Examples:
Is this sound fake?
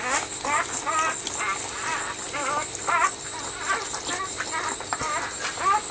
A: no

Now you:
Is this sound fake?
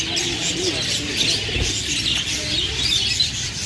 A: no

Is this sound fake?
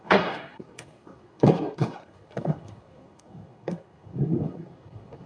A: yes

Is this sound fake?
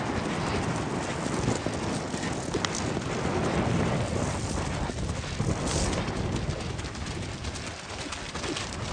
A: no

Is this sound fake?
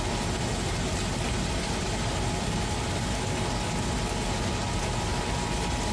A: no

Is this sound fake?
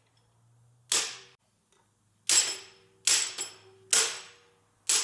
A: no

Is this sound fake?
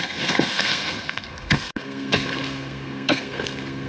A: yes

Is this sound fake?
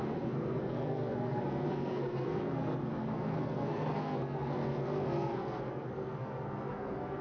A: yes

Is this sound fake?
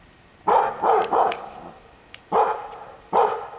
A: no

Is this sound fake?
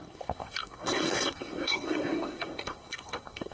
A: yes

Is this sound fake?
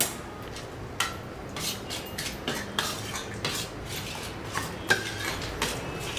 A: no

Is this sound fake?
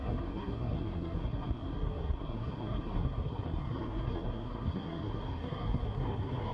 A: yes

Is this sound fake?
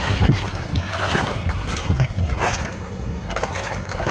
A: yes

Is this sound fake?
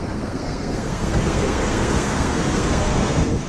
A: yes